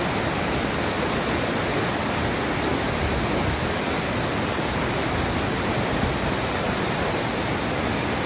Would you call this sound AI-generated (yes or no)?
no